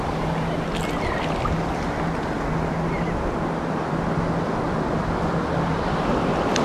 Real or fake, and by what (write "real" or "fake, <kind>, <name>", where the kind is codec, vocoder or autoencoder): real